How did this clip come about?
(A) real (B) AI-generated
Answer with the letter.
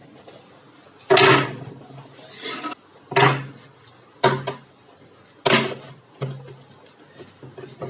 A